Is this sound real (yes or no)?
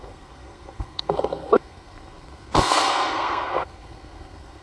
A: no